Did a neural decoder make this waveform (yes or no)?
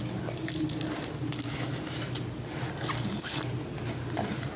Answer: no